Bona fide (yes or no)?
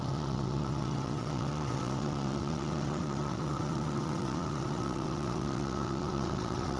no